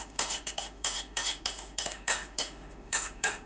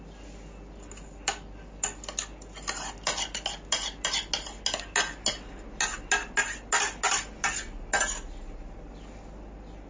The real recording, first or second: second